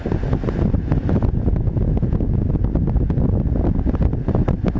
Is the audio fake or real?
real